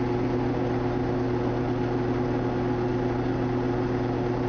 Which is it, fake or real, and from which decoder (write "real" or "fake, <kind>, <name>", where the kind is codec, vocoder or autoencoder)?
real